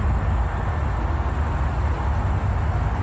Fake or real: real